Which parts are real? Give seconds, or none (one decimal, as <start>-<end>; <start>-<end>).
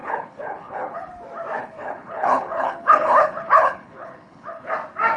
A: 1.1-1.6; 4.7-5.2